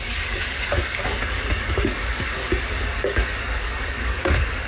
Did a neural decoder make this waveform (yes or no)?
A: yes